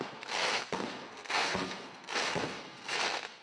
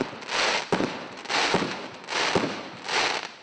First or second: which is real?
second